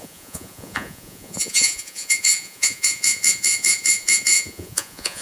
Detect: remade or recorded remade